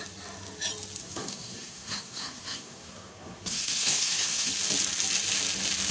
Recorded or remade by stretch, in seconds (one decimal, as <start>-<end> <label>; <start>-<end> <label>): 0.0-1.0 recorded; 1.0-4.5 remade; 4.5-5.9 recorded